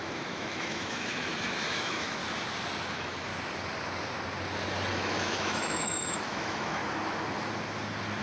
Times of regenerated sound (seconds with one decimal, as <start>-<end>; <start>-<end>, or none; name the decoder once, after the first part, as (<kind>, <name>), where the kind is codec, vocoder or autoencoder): 0.0-2.2 (autoencoder, DAC-VAE); 2.9-3.3; 4.9-6.8